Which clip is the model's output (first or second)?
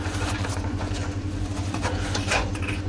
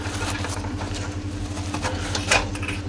first